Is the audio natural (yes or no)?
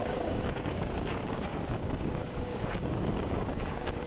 no